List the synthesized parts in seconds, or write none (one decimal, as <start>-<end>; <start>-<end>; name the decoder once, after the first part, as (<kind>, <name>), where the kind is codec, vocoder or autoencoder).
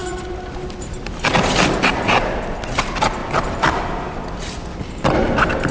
3.2-3.8 (vocoder, BigVGAN v2)